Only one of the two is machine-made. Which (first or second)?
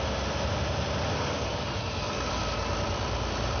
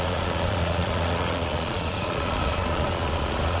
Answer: second